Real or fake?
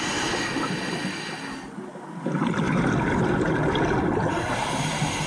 real